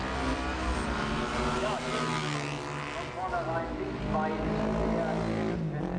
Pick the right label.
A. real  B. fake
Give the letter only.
A